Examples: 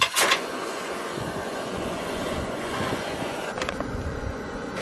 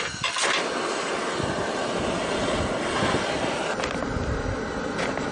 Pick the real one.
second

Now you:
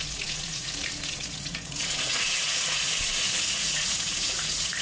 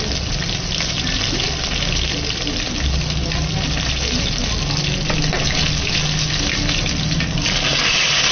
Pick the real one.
second